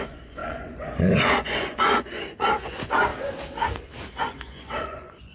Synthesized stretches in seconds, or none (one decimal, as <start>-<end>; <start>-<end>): 0.0-3.1; 4.2-5.3